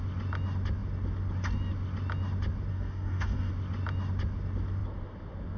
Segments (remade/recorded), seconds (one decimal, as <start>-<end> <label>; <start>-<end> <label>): 0.0-2.7 recorded; 2.7-3.5 remade; 3.5-5.6 recorded